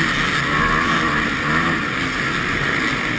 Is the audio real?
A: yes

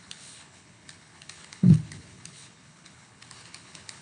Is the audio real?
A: no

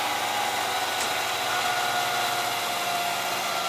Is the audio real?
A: yes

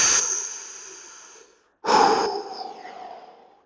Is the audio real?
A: yes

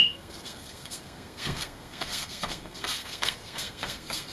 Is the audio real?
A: no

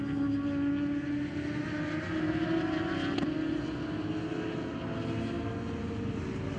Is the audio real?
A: yes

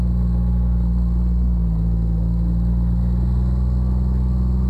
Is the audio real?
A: yes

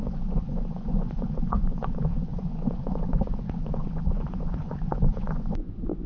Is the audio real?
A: no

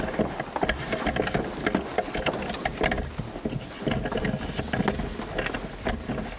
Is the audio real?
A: yes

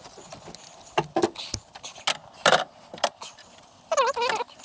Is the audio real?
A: yes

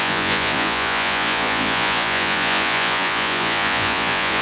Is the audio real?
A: no